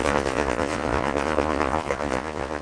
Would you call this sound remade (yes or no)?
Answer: yes